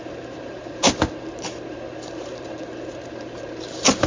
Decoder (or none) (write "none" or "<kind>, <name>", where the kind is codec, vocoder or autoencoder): vocoder, BigVGAN v2